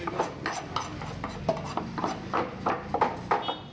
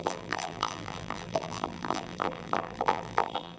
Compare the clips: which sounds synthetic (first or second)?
second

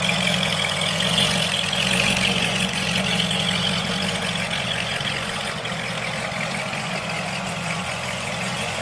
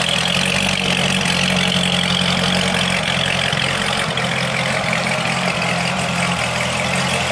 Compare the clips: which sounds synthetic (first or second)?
first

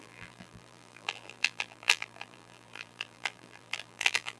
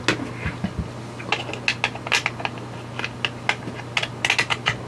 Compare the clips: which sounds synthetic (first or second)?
first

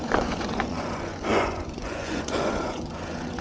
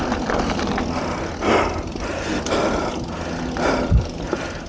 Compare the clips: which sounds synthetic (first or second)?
first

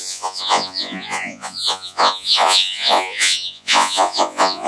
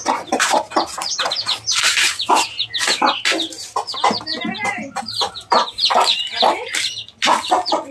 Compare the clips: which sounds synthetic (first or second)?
first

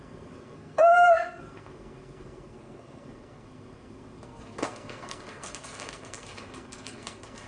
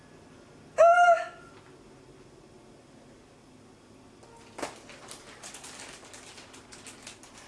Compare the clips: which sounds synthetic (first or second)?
first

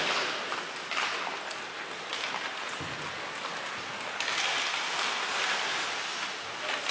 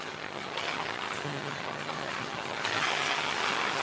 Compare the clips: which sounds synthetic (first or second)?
second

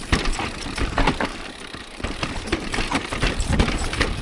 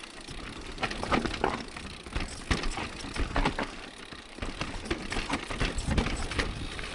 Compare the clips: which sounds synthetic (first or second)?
first